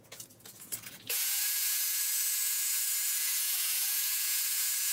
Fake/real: fake